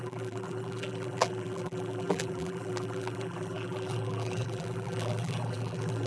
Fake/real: fake